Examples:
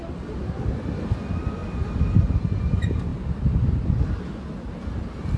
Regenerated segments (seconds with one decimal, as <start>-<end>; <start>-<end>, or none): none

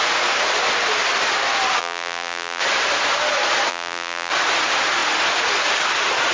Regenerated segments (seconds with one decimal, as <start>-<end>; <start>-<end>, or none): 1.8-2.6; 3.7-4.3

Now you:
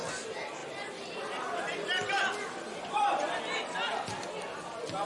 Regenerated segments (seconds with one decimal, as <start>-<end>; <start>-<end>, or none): 0.6-3.4

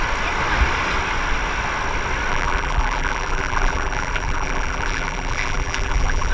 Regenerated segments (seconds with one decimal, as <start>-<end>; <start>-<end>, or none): 2.3-6.3

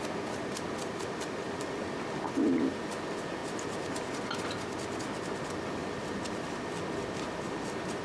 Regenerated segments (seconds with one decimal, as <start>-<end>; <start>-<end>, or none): 5.8-6.7